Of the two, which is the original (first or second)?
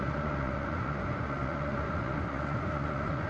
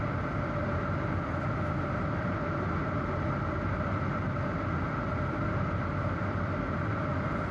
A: second